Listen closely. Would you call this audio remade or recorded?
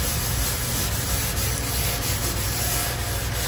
recorded